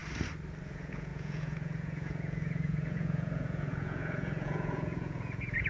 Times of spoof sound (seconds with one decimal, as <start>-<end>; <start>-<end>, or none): 0.6-5.7